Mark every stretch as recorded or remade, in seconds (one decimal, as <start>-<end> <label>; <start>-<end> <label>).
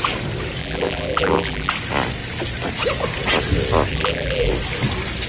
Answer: 0.0-0.6 recorded; 0.6-1.7 remade; 1.7-3.9 recorded; 3.9-4.5 remade; 4.5-5.3 recorded